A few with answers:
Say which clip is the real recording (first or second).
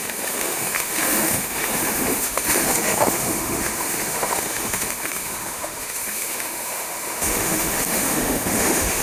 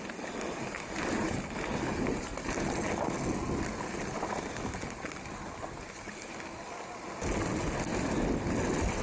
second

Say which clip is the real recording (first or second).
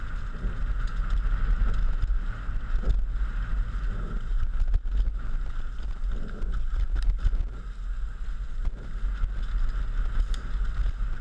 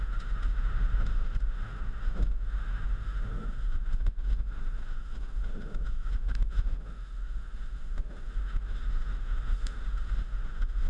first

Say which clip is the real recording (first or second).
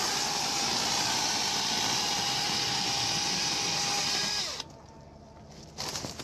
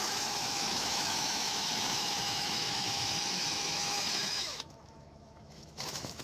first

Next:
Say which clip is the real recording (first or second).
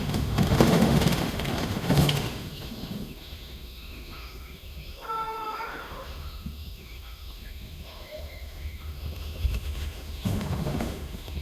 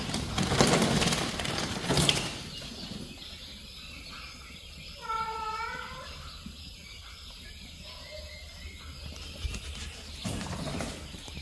second